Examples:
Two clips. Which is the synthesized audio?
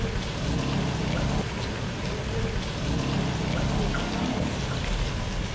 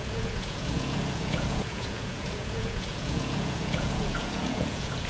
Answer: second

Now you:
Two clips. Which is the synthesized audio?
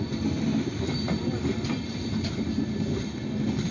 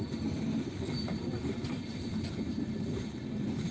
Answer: second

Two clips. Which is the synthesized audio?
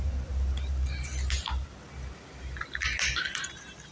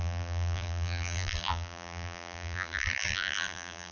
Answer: second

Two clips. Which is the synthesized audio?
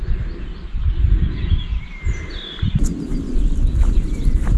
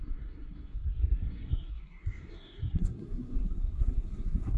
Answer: second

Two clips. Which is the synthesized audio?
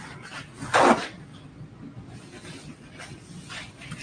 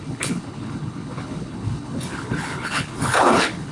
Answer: second